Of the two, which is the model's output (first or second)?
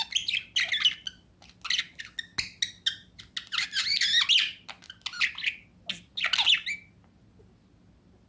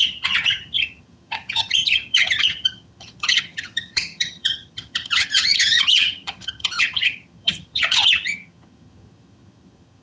second